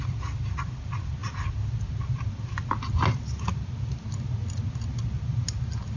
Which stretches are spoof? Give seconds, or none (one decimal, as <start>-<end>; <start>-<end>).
none